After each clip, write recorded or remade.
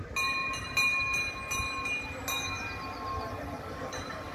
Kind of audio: recorded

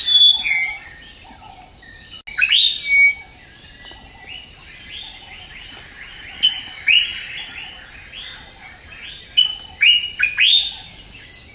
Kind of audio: recorded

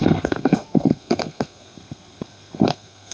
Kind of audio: remade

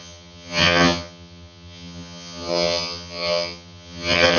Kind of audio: remade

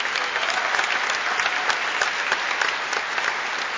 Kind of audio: recorded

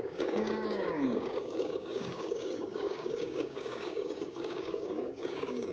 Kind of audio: remade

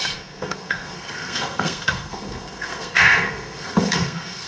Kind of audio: remade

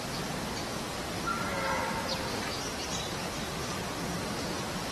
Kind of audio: recorded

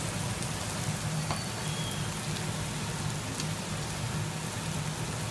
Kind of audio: recorded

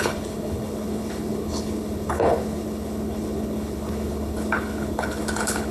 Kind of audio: remade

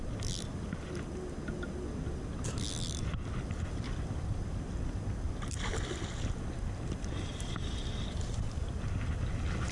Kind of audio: recorded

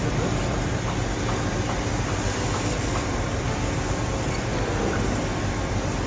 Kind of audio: recorded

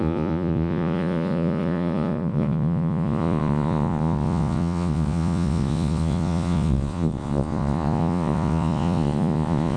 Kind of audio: remade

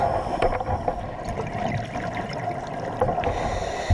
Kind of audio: recorded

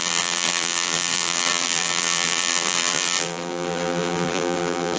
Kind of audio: remade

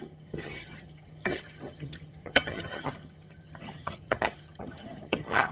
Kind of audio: remade